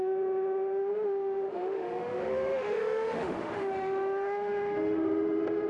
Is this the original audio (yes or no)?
no